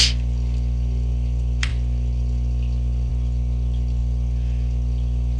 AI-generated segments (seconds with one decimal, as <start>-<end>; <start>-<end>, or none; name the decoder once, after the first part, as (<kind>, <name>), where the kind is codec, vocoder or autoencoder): none